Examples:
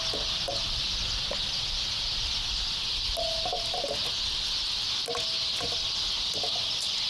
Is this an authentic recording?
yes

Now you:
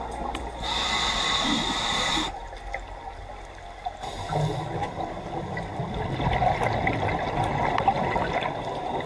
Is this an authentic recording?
yes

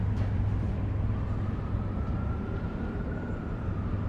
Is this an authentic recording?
no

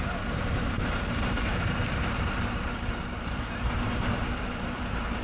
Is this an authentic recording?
no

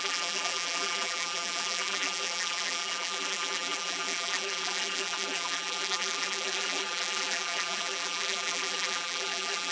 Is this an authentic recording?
no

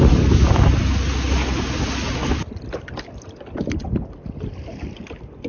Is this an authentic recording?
yes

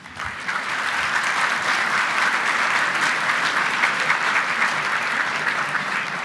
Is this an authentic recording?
no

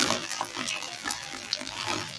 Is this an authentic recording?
no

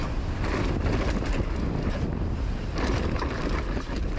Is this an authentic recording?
yes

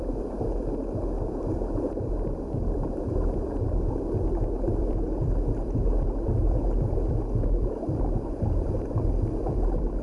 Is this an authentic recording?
no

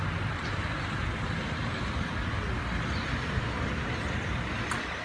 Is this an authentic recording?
yes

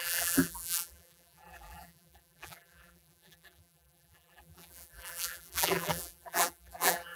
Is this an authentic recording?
no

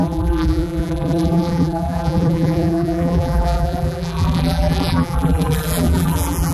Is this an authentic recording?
no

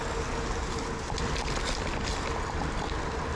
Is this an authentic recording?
yes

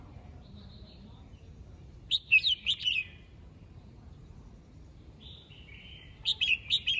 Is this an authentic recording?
no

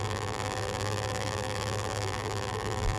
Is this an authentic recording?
no